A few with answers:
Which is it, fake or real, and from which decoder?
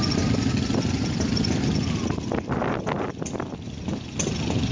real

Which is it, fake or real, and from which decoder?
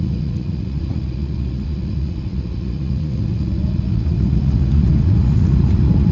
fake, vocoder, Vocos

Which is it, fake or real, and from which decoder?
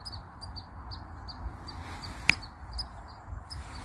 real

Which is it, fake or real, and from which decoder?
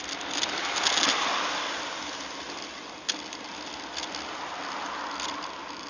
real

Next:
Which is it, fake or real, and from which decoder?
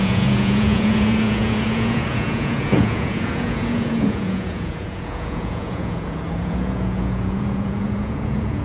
fake, vocoder, Vocos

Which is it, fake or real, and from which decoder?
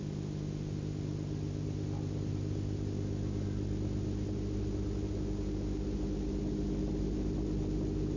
real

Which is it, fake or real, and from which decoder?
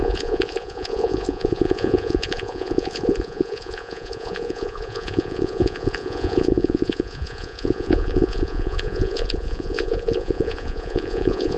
fake, vocoder, Vocos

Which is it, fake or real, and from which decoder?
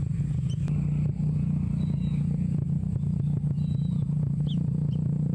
real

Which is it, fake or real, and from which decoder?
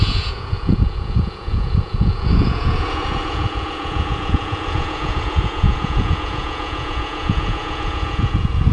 fake, vocoder, Vocos